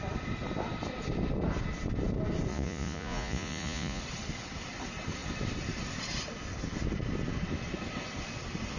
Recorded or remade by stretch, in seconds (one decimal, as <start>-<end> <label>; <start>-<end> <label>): 0.0-2.5 recorded; 2.5-4.0 remade; 4.0-8.8 recorded